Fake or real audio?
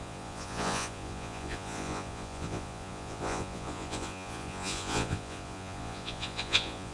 fake